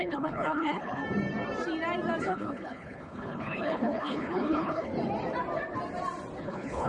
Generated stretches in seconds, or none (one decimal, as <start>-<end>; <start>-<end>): 0.0-1.0; 2.2-4.9; 6.4-6.9